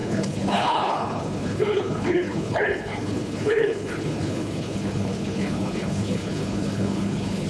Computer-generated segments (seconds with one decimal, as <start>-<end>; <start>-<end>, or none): 0.0-7.5